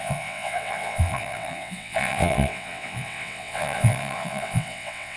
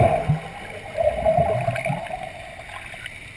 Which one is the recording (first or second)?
second